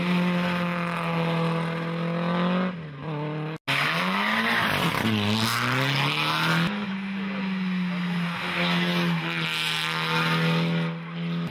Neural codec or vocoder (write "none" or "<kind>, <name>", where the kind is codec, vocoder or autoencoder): none